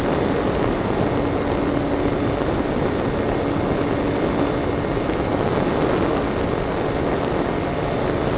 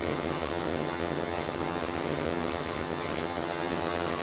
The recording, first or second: first